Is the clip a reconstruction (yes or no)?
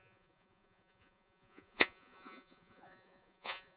yes